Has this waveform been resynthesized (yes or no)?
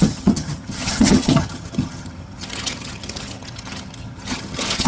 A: yes